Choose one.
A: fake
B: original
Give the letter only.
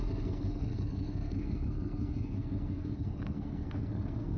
A